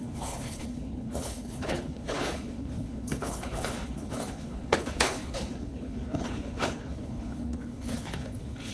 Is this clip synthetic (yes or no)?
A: yes